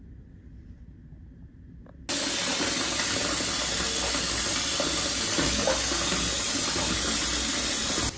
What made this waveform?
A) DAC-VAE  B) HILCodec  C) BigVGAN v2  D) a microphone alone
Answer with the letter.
D